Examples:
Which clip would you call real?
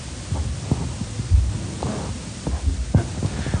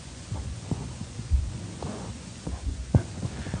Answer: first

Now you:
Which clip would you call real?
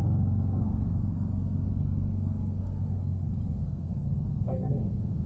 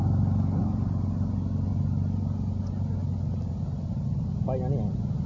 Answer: second